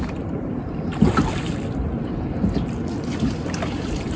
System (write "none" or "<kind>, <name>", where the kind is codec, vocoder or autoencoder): none